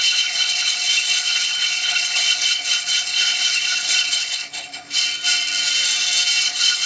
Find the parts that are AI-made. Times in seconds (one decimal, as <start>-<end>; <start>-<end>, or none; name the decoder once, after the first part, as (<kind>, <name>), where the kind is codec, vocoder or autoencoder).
0.0-5.0 (codec, HILCodec); 6.4-6.9